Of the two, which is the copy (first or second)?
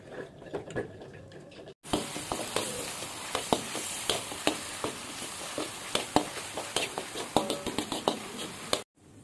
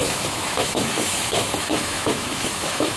second